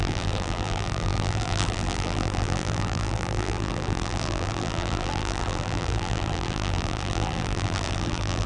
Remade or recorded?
remade